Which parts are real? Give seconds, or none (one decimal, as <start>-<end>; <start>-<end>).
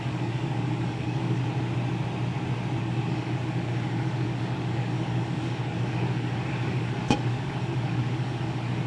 1.4-2.8